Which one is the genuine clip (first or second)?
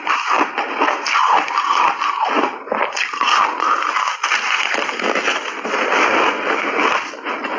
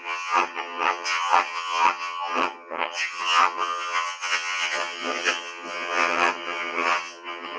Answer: first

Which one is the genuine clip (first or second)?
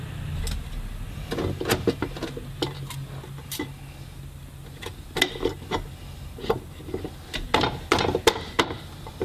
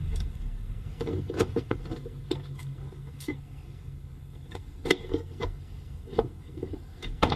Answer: first